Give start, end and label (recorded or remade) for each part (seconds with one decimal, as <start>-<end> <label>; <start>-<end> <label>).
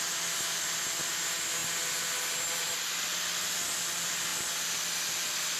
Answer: 0.0-5.6 recorded